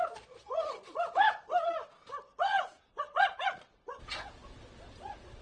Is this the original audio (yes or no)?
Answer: no